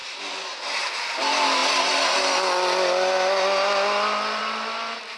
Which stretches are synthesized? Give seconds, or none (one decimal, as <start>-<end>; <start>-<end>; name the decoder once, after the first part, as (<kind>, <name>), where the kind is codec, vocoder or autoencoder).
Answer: none